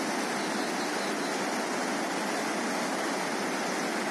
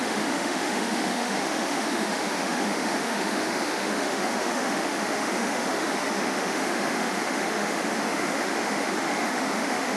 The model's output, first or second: second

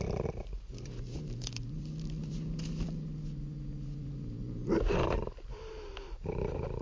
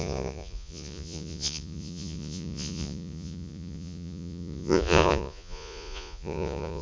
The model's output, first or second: second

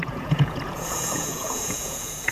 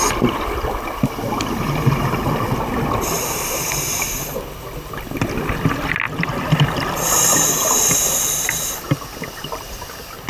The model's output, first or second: first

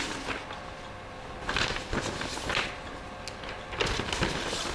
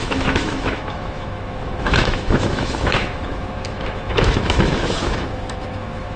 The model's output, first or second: second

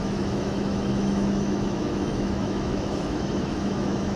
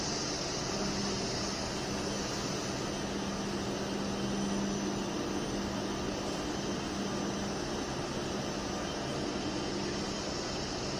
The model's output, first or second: first